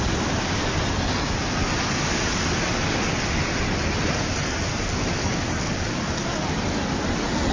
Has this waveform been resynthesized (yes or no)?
no